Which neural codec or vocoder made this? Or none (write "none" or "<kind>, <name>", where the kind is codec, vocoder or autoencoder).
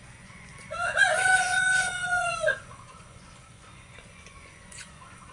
vocoder, Vocos